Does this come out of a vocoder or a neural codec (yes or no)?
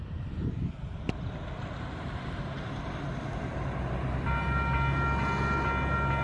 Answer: no